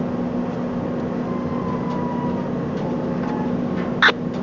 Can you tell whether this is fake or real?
real